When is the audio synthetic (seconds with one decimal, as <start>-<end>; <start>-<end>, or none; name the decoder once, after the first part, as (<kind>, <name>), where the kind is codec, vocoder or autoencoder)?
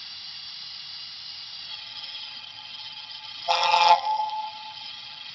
1.7-5.3 (vocoder, HiFi-GAN)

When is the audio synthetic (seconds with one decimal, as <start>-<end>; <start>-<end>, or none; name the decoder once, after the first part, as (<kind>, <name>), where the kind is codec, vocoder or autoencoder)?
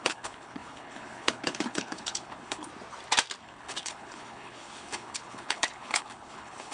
0.0-2.7 (codec, HILCodec); 3.4-6.7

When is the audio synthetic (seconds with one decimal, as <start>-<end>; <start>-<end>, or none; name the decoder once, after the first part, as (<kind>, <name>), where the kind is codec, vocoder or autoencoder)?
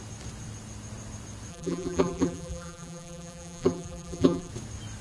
1.5-4.5 (vocoder, BigVGAN v2)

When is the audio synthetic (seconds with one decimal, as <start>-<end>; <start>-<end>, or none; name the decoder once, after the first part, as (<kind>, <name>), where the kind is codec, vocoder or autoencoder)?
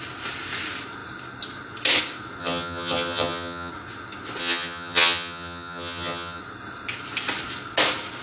2.4-3.7 (vocoder, HiFi-GAN); 4.4-6.4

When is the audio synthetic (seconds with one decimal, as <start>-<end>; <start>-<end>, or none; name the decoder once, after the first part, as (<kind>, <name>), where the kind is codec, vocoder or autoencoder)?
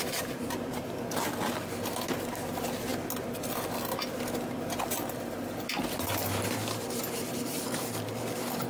0.0-1.0 (vocoder, BigVGAN v2)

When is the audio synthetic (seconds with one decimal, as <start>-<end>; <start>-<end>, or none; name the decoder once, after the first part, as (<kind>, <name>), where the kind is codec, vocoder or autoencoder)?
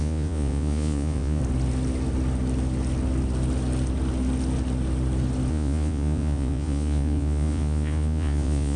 0.0-1.4 (vocoder, Vocos); 5.5-8.8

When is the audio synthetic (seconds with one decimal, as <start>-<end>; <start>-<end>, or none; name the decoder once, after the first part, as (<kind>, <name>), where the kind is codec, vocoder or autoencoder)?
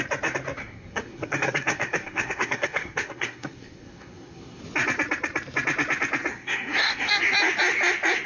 0.6-4.6 (codec, SNAC); 6.3-7.1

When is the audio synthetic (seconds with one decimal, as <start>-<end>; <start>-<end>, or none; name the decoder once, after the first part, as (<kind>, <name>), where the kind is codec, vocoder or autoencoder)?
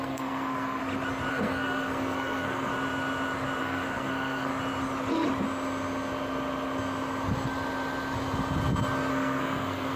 0.0-0.8 (codec, SNAC); 1.3-2.7; 3.6-4.5; 9.1-10.0